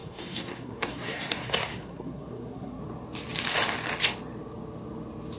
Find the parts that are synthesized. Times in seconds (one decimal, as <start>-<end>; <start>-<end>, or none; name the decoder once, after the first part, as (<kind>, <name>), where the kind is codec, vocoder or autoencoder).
0.0-2.8 (codec, SNAC)